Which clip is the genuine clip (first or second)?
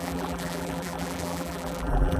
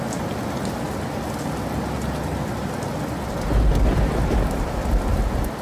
second